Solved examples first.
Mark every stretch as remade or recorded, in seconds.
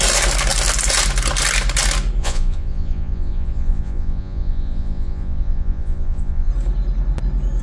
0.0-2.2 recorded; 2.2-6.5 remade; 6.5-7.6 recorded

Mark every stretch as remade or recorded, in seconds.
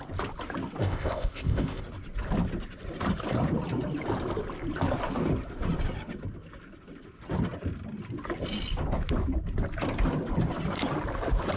0.0-0.8 recorded; 0.8-1.8 remade; 1.8-11.6 recorded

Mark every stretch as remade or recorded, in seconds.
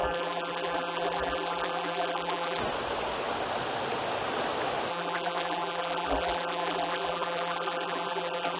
0.0-2.6 remade; 2.6-4.9 recorded; 4.9-8.6 remade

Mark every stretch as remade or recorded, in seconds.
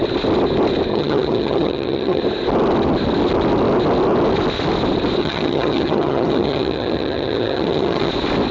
0.0-0.9 recorded; 0.9-2.2 remade; 2.2-5.2 recorded; 5.2-8.1 remade; 8.1-8.5 recorded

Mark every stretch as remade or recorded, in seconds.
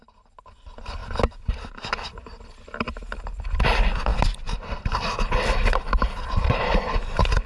0.0-7.5 recorded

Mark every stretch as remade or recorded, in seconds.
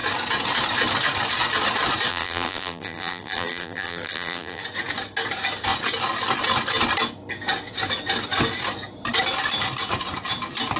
0.0-2.1 recorded; 2.1-4.6 remade; 4.6-10.8 recorded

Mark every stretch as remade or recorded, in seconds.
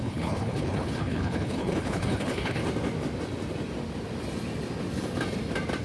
0.0-2.6 remade; 2.6-5.8 recorded